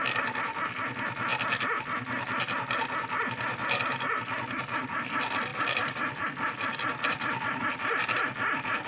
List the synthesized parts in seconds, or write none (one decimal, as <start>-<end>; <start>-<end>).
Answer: 5.5-7.6